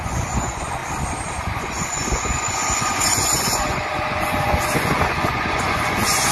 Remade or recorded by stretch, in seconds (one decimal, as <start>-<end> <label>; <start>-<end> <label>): 0.0-0.8 remade; 0.8-1.4 recorded; 1.4-6.3 remade

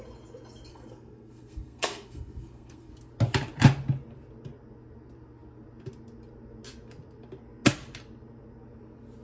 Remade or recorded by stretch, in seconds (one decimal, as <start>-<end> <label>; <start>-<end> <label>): 0.0-0.7 recorded; 0.7-2.9 remade; 2.9-9.2 recorded

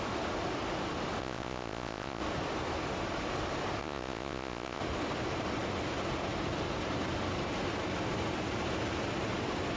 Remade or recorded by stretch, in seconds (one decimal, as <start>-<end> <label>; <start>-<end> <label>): 0.0-1.2 recorded; 1.2-2.2 remade; 2.2-3.8 recorded; 3.8-4.8 remade; 4.8-9.8 recorded

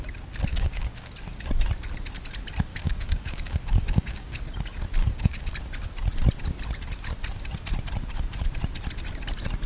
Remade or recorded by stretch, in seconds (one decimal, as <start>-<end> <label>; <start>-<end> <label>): 0.0-0.5 recorded; 0.5-1.1 remade; 1.1-2.7 recorded; 2.7-4.4 remade; 4.4-5.0 recorded; 5.0-5.5 remade; 5.5-9.7 recorded

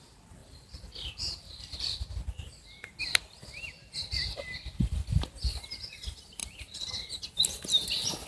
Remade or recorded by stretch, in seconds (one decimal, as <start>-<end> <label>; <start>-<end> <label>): 0.0-0.4 recorded; 0.4-3.0 remade; 3.0-6.4 recorded; 6.4-7.3 remade; 7.3-8.3 recorded

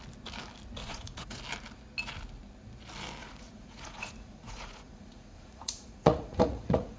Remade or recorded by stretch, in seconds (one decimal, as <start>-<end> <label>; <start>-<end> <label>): 0.0-0.8 recorded; 0.8-1.4 remade; 1.4-3.2 recorded; 3.2-7.0 remade

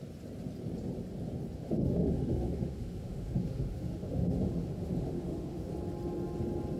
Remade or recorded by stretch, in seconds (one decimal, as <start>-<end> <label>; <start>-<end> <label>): 0.0-1.6 recorded; 1.6-5.7 remade; 5.7-6.8 recorded

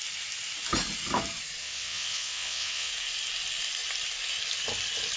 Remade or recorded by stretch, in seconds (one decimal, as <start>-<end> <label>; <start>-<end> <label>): 0.0-1.6 recorded; 1.6-2.9 remade; 2.9-5.2 recorded